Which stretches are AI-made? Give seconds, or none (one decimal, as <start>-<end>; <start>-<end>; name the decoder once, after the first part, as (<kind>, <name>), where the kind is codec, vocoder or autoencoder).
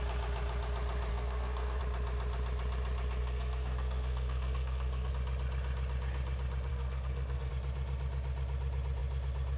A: 1.1-1.8 (codec, SNAC); 3.2-5.1; 6.7-7.5